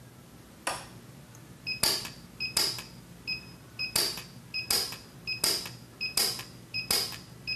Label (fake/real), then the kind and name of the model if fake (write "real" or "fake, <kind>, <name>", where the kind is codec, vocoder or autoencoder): real